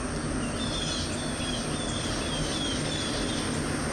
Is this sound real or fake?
real